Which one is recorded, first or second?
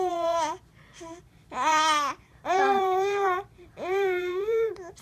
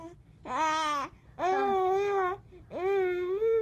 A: second